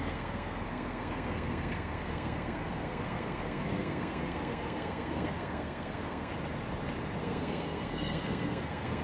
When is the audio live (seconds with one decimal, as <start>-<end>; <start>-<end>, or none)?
6.3-7.2